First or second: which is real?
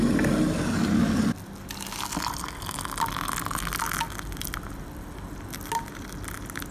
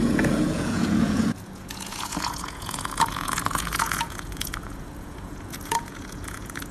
first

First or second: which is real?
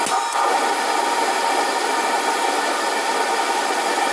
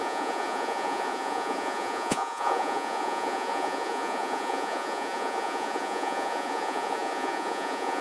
first